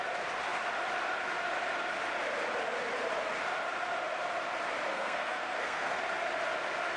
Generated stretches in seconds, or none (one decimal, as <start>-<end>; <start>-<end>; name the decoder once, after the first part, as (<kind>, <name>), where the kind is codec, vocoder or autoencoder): 4.9-6.0 (codec, SNAC)